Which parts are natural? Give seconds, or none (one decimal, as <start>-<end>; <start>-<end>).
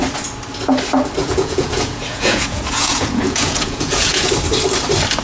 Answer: 0.0-1.2; 4.3-5.2